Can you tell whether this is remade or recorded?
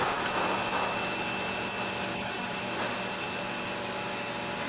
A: recorded